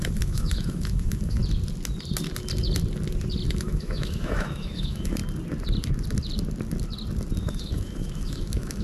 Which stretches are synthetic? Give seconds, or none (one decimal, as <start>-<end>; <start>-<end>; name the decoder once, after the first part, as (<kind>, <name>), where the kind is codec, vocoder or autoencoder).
0.0-1.4 (autoencoder, DAC-VAE); 3.5-5.2; 7.4-8.8